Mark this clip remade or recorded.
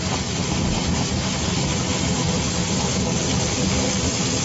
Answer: recorded